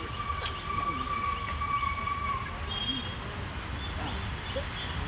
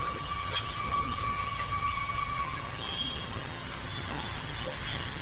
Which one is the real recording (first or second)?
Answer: first